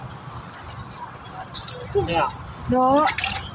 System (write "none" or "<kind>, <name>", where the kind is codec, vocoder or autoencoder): none